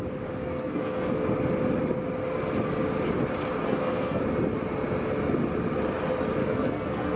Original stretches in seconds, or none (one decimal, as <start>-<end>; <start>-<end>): 0.0-0.4; 1.1-3.6; 4.2-6.4

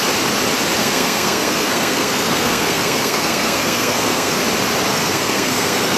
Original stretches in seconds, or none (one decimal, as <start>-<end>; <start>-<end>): 0.0-0.8; 4.4-4.9

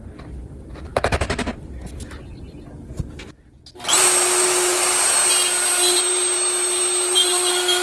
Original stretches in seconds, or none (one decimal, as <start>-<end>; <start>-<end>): 0.0-7.8

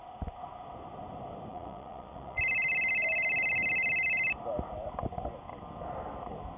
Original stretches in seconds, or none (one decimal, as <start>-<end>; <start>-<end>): 0.0-1.5; 2.4-6.6

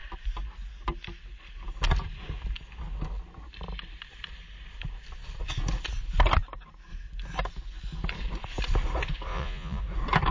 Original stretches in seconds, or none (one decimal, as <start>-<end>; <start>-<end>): 0.0-9.3; 9.8-10.3

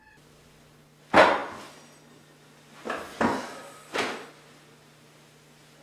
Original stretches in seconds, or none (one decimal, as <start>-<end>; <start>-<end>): 0.0-5.8